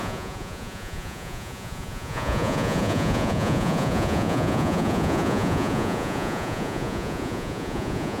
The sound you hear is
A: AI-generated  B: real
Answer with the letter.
A